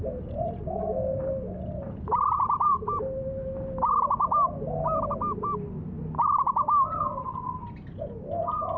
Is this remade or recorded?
recorded